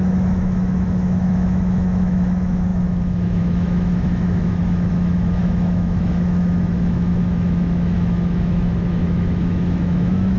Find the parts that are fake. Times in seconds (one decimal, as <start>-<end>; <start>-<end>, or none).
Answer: 0.0-10.4